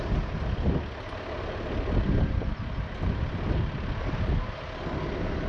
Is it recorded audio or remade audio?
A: recorded